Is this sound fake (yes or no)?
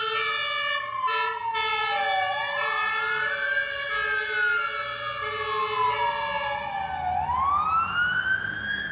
no